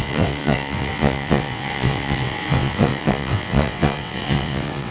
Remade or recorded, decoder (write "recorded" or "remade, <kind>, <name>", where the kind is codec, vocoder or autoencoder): remade, vocoder, WaveNeXt